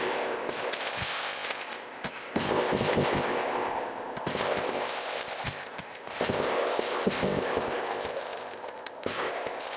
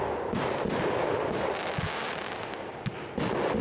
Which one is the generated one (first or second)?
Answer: first